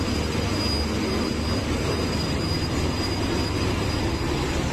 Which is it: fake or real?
real